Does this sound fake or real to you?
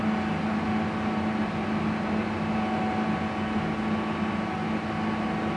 real